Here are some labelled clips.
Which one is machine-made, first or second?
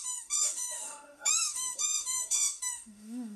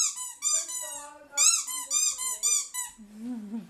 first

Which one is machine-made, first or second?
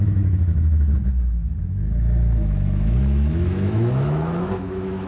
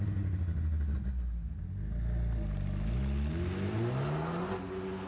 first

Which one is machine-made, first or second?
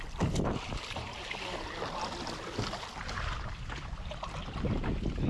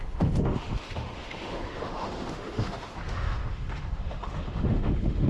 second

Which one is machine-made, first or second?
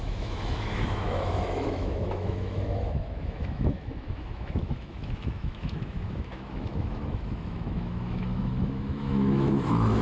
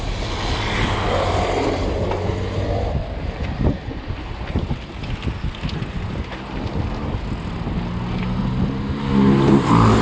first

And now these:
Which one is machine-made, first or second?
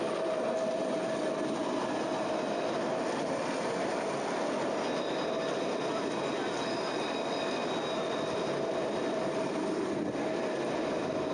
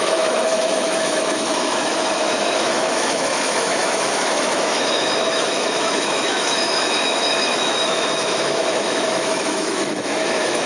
second